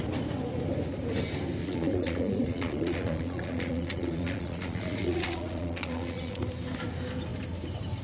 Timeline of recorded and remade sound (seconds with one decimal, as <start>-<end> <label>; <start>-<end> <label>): 0.0-1.6 recorded; 1.6-6.4 remade; 6.4-8.0 recorded